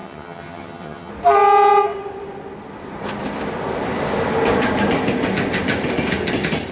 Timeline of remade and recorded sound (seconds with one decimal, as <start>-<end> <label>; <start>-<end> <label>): 0.0-1.1 remade; 1.1-6.7 recorded